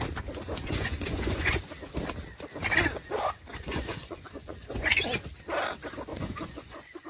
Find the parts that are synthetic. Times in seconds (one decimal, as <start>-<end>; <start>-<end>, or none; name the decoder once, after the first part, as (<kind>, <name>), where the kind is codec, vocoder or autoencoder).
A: 0.6-1.5 (vocoder, Vocos); 3.5-4.9; 6.1-7.1